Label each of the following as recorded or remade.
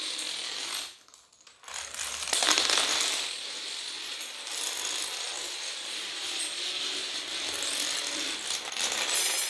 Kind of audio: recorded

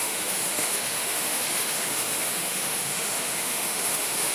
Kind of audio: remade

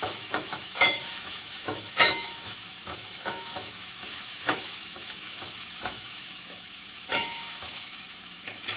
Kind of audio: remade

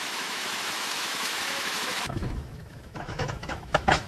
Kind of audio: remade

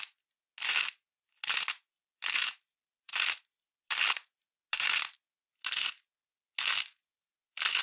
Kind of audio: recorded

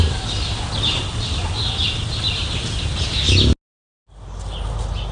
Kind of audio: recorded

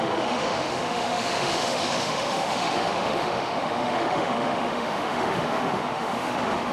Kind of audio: remade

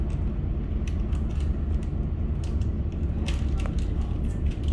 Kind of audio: recorded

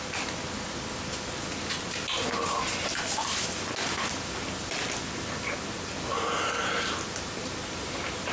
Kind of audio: recorded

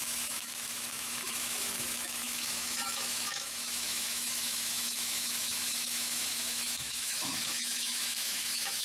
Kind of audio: remade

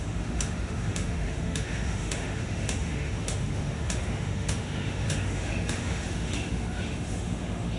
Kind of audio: remade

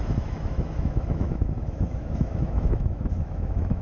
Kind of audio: remade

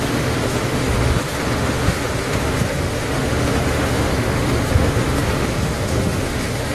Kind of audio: remade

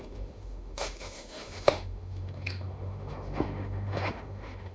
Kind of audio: remade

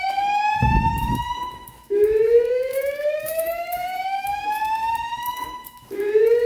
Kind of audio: remade